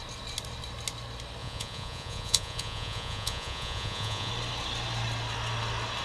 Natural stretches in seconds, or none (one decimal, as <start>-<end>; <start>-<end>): 0.0-1.4; 4.3-6.0